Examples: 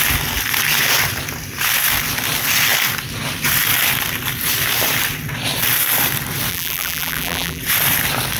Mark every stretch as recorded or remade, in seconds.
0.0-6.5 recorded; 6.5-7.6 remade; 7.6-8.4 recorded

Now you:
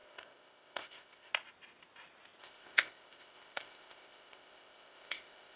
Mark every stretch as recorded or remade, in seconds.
0.0-1.3 remade; 1.3-2.4 recorded; 2.4-5.6 remade

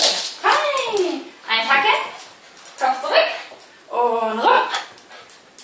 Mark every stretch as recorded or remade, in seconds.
0.0-5.6 recorded